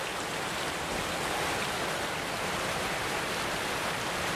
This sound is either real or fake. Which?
real